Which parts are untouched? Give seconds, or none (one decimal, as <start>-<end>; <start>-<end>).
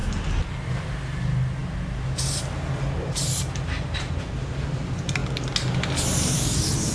0.0-6.9